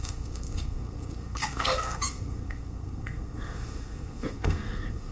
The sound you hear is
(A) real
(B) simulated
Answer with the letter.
B